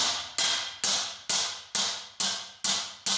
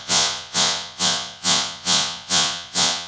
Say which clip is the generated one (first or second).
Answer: second